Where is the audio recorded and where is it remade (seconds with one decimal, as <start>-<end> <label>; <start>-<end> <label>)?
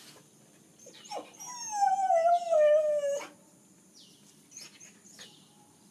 0.0-5.9 recorded